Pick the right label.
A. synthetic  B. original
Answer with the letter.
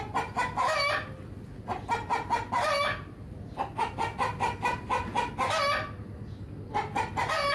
B